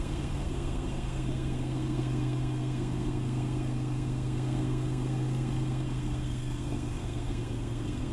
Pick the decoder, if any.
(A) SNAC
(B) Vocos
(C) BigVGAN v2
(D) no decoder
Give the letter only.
A